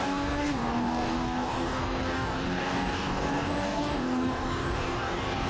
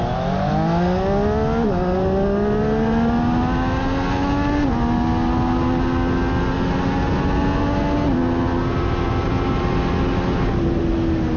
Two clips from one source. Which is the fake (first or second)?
first